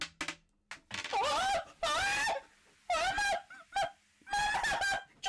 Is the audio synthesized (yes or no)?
no